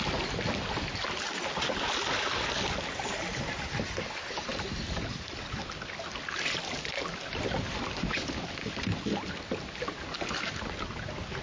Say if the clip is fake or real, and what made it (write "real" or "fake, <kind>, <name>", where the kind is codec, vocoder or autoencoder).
real